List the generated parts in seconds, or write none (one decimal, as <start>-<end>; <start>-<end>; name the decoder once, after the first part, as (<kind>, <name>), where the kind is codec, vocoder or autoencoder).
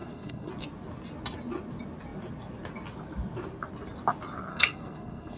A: 0.0-0.5 (codec, SNAC); 4.5-5.4